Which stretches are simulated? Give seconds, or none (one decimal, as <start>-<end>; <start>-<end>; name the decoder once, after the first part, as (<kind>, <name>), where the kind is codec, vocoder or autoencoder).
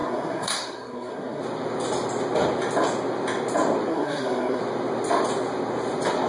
0.0-1.4 (codec, SNAC); 3.9-4.6